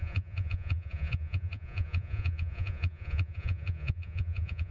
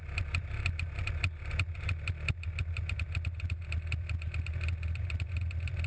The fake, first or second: first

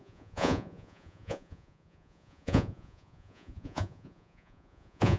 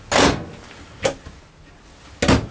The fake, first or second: first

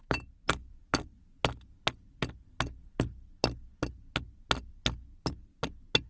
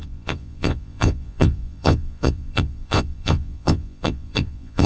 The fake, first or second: second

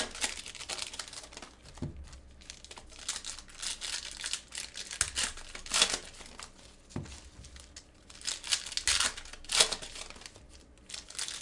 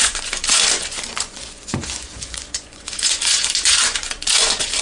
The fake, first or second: second